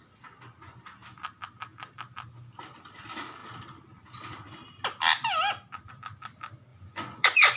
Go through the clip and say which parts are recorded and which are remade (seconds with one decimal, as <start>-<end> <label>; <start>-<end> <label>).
0.0-6.7 recorded; 6.7-7.6 remade